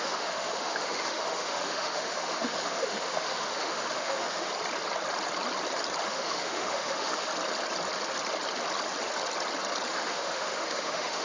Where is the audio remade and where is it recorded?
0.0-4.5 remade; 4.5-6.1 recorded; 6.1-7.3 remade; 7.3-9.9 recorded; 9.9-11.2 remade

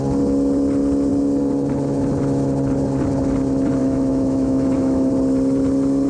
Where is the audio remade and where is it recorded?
0.0-3.8 recorded; 3.8-5.1 remade; 5.1-6.1 recorded

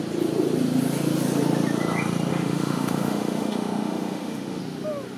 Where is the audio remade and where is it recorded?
0.0-2.3 recorded; 2.3-4.6 remade; 4.6-5.2 recorded